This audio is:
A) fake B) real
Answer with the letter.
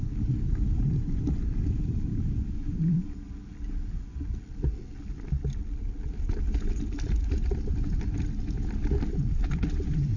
B